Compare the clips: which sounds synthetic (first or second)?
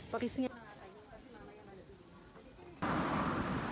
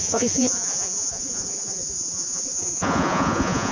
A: second